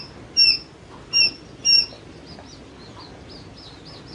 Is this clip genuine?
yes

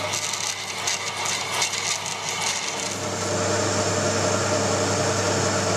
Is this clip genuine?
yes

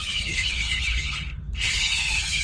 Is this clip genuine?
no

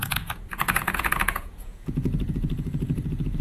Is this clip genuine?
no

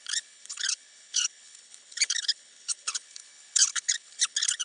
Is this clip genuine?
no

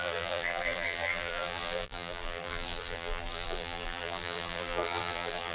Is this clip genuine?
no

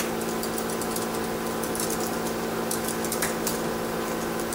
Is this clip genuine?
yes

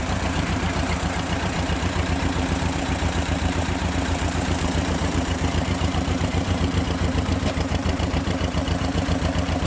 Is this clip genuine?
no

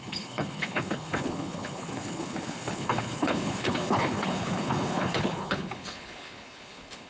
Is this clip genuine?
no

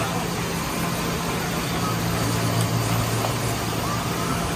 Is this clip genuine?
yes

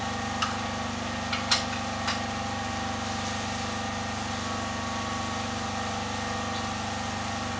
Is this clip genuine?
yes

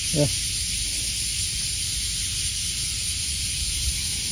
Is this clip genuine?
yes